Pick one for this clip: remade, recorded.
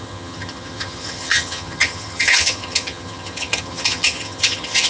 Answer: remade